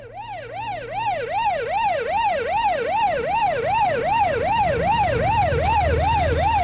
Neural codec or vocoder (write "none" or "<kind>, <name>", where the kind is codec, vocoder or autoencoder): none